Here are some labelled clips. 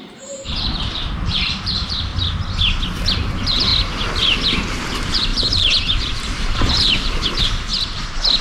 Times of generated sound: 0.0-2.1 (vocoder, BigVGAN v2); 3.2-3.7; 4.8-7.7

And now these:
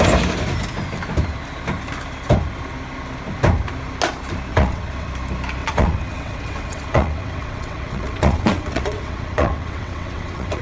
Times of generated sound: 4.5-5.1 (vocoder, WaveNeXt); 5.6-10.6

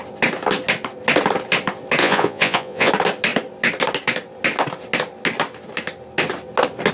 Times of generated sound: 2.0-2.9 (vocoder, Vocos)

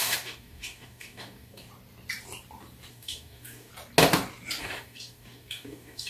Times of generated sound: 0.0-1.7 (codec, DAC); 2.9-3.7; 4.6-6.1

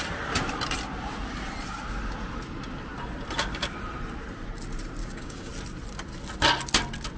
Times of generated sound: 5.0-5.5 (codec, DAC)

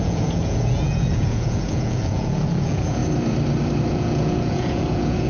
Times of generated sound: 0.0-3.0 (vocoder, Vocos); 3.9-5.3

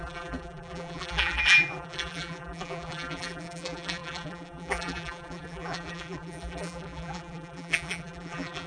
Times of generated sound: 0.0-8.7 (vocoder, BigVGAN v2)